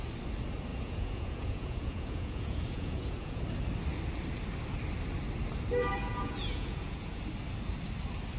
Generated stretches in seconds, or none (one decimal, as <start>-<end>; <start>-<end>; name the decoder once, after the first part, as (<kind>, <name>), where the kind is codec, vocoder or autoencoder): 0.7-3.4 (vocoder, Vocos); 5.9-7.2